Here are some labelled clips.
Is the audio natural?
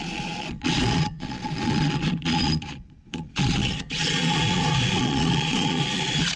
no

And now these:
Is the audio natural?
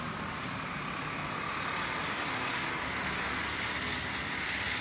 yes